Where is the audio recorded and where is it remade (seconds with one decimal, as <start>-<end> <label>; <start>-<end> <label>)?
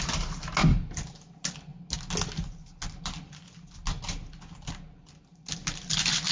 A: 0.0-6.3 recorded